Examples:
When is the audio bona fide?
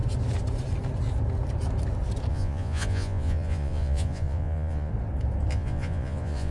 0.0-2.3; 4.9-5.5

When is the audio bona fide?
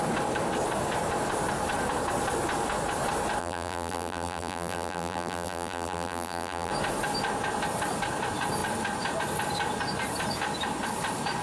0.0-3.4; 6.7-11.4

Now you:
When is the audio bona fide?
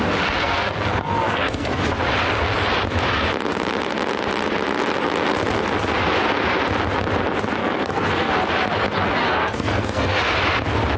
0.0-0.4; 1.8-7.6; 8.3-9.2; 10.2-11.0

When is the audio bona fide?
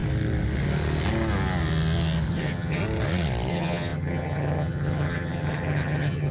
0.0-2.3; 2.8-3.5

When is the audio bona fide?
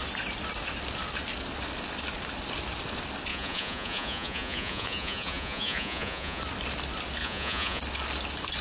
0.0-3.3; 6.4-7.2; 7.8-8.6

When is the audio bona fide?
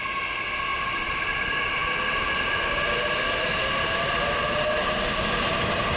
0.0-0.7; 1.2-1.8; 4.3-6.0